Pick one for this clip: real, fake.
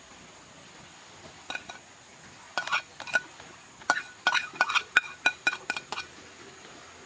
real